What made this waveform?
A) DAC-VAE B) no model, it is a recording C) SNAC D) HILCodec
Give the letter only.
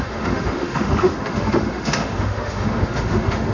A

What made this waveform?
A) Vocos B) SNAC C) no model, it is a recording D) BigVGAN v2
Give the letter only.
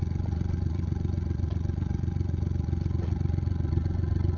A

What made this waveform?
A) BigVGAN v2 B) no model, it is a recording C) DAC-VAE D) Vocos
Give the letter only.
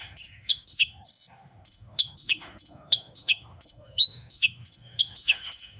C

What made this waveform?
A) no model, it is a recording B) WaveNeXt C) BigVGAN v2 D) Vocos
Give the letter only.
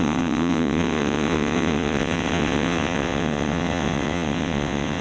B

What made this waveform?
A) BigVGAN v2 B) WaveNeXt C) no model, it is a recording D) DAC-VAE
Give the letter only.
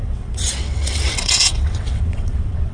B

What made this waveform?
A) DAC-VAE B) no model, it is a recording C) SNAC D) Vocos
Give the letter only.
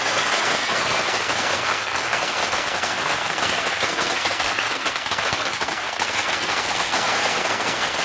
C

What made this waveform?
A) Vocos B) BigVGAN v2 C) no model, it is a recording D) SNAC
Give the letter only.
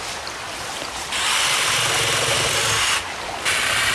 C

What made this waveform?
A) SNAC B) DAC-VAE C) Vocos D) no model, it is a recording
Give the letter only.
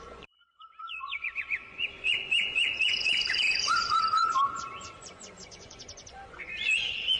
C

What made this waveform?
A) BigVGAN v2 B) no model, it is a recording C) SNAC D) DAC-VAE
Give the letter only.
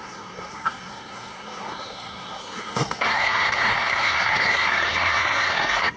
C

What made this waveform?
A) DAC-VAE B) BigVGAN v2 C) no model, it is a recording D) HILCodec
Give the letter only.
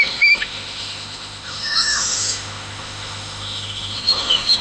A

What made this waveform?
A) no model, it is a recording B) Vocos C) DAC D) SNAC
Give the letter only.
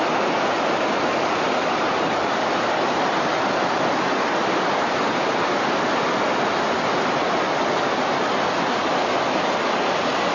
A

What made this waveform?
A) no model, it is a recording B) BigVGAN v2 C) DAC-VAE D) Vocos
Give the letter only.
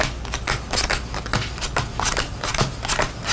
A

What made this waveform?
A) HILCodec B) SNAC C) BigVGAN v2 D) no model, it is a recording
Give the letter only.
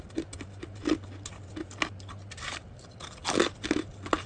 D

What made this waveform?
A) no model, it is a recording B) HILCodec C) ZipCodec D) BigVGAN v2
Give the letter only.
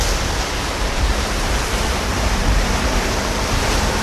D